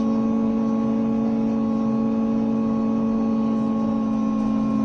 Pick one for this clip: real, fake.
real